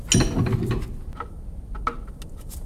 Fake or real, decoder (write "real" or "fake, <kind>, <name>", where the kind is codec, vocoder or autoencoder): real